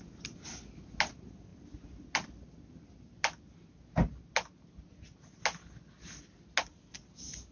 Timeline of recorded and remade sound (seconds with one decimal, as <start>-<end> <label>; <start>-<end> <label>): 0.0-7.5 recorded